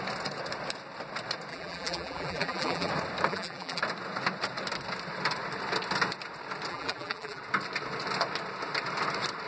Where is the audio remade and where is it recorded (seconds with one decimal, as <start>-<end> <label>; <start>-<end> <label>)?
0.0-1.5 recorded; 1.5-2.9 remade; 2.9-3.3 recorded; 3.3-3.8 remade; 3.8-6.7 recorded; 6.7-7.4 remade; 7.4-9.5 recorded